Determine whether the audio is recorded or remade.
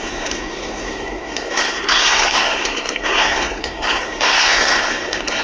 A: remade